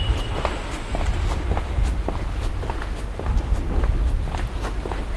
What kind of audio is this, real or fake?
real